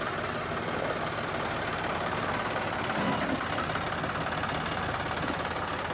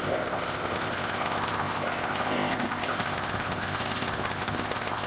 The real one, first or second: first